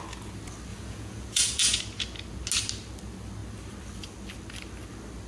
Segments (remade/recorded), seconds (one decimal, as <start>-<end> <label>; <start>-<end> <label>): 0.0-0.7 recorded; 0.7-1.8 remade; 1.8-5.3 recorded